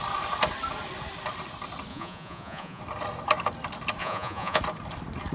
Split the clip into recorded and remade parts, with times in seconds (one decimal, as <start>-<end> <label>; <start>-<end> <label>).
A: 0.0-1.9 recorded; 1.9-2.8 remade; 2.8-4.0 recorded; 4.0-4.6 remade; 4.6-5.3 recorded